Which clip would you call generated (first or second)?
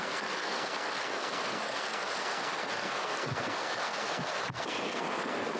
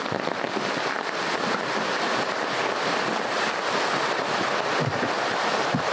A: first